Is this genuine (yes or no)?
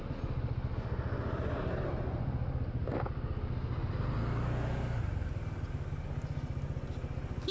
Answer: yes